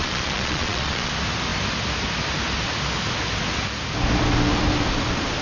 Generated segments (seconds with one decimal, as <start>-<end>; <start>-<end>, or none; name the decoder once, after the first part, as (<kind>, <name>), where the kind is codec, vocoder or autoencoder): 0.0-1.1 (vocoder, Vocos)